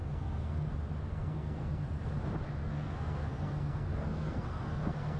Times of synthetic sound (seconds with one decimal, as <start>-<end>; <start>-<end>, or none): 0.0-0.7; 1.1-2.1; 2.6-5.2